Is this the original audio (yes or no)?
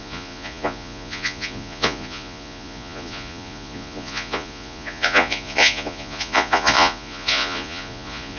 no